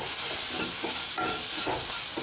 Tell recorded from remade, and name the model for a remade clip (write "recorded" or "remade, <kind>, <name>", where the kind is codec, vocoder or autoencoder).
recorded